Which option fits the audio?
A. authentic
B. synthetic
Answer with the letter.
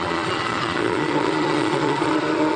B